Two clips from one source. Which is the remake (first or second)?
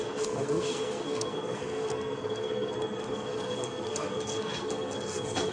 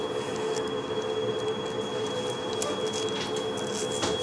first